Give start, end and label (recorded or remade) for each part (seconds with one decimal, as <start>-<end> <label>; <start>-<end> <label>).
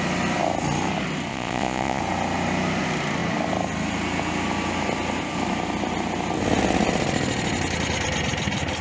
0.0-1.3 recorded; 1.3-2.0 remade; 2.0-8.8 recorded